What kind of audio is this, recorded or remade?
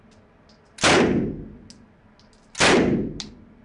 recorded